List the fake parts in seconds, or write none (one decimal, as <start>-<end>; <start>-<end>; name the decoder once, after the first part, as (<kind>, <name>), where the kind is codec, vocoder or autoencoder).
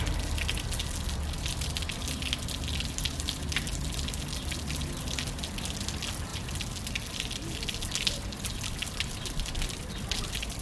none